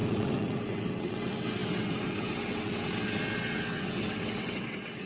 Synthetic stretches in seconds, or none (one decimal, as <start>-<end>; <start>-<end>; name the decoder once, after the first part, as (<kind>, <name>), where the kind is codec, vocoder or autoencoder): 0.0-5.1 (vocoder, WaveNeXt)